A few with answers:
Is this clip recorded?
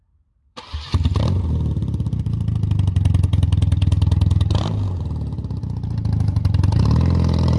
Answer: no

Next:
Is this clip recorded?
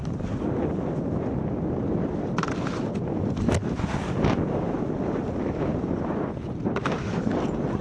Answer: yes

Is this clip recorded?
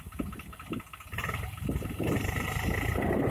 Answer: yes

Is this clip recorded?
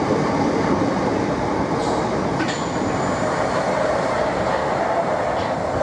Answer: yes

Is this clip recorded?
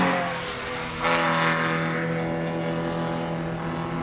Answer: yes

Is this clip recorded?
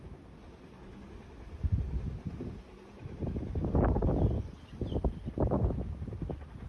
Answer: yes